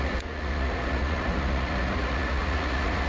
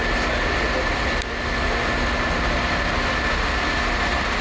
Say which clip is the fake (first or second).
first